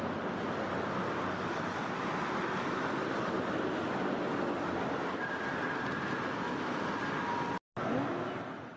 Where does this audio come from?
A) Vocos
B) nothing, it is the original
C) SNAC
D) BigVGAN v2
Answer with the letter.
B